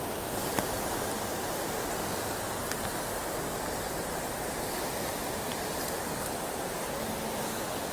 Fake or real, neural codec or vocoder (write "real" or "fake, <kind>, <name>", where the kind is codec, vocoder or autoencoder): real